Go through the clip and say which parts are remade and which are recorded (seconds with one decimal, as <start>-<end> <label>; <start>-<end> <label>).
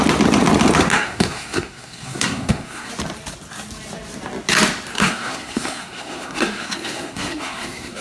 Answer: 0.0-0.9 recorded; 0.9-2.9 remade; 2.9-4.9 recorded; 4.9-8.0 remade